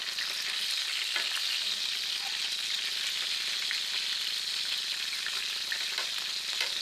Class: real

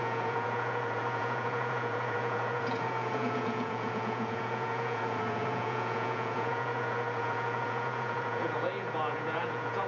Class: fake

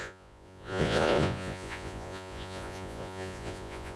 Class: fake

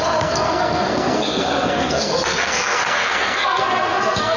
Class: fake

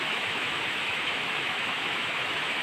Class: fake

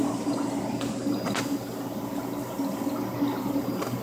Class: real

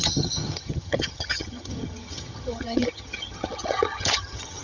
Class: fake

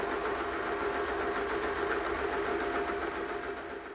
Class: real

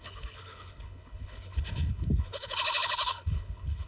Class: fake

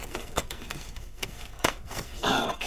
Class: fake